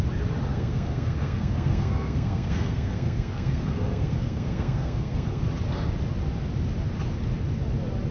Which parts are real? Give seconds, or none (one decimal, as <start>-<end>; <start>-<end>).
0.0-0.5; 5.4-8.1